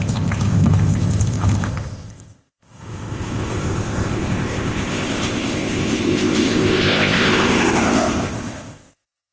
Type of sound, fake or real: fake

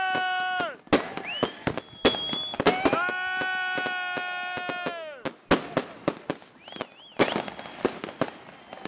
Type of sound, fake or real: real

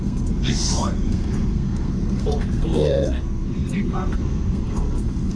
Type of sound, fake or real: fake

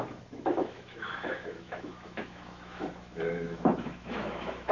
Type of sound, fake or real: fake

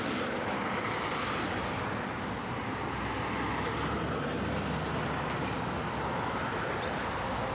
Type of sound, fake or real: real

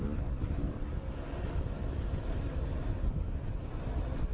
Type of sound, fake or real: real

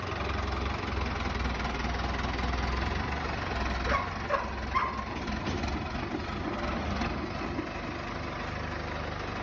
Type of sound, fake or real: real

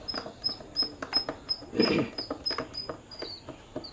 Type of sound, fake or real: real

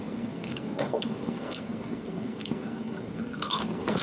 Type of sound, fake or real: fake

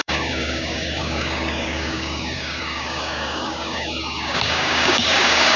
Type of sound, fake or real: fake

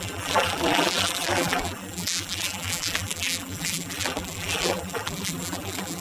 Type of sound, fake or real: fake